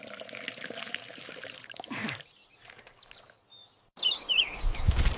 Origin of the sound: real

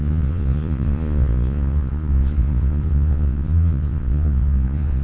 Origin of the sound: fake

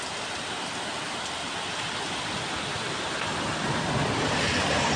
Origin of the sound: real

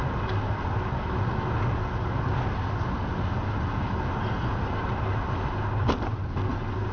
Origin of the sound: real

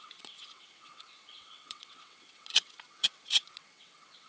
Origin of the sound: fake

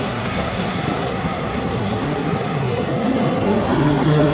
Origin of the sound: fake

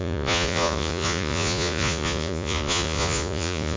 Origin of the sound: fake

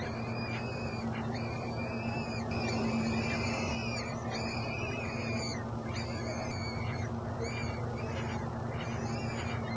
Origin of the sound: real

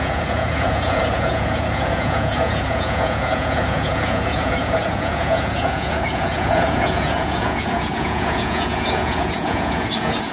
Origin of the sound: fake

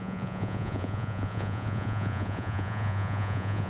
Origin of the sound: fake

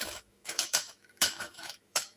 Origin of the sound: fake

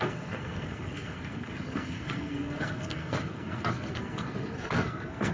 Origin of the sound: fake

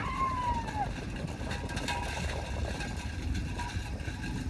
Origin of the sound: real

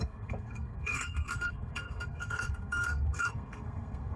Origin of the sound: fake